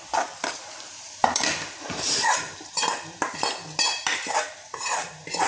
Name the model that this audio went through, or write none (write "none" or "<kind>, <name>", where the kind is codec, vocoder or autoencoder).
vocoder, BigVGAN v2